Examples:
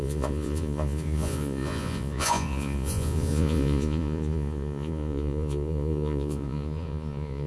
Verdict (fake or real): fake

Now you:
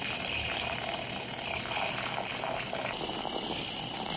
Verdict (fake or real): real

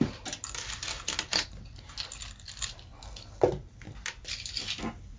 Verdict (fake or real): real